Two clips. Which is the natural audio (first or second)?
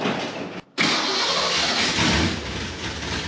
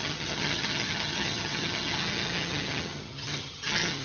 first